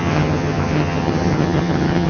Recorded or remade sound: remade